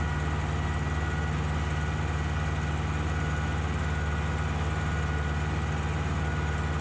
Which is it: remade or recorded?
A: recorded